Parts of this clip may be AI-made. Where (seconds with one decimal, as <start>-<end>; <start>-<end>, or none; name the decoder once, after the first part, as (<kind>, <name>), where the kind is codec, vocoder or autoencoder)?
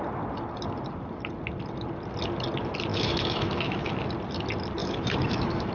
2.9-3.9 (autoencoder, DAC-VAE); 4.8-5.7